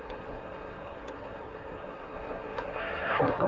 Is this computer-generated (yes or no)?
yes